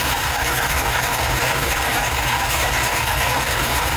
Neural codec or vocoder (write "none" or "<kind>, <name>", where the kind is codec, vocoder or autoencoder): codec, DAC